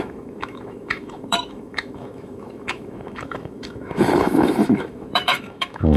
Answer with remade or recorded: remade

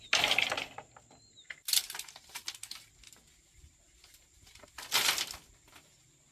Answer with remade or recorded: recorded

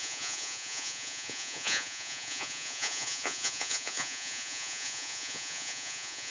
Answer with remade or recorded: remade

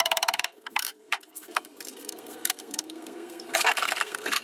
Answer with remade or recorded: remade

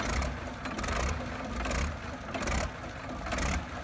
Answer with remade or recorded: recorded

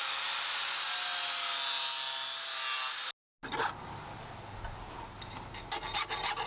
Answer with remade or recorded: recorded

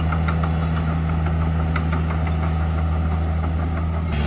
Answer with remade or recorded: recorded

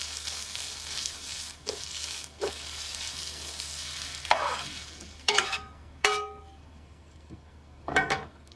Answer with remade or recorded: remade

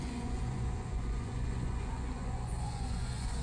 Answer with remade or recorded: remade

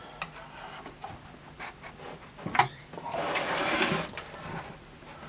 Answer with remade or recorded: recorded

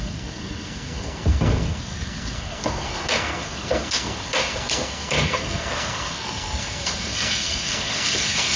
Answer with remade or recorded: remade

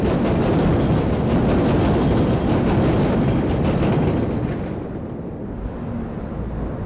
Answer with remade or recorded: recorded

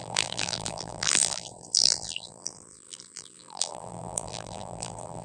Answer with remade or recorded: remade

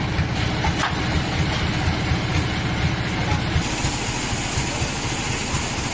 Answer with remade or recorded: recorded